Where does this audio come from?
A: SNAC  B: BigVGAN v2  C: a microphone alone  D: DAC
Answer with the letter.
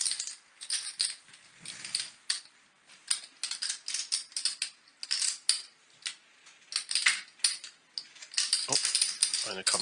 C